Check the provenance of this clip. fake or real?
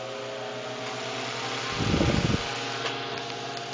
real